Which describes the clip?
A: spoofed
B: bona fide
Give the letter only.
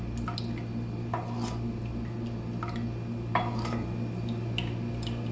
B